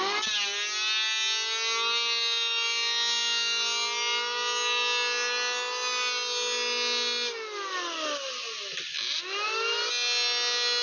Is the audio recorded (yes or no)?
yes